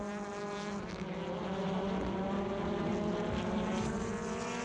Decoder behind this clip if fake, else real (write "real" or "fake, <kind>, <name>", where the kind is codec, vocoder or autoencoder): real